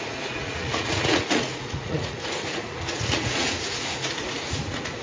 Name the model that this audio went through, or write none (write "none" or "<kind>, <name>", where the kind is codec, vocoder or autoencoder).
vocoder, Vocos